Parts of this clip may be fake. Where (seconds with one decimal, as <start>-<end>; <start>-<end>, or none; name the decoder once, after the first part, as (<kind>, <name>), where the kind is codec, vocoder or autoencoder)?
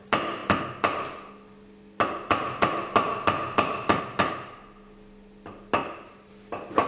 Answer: none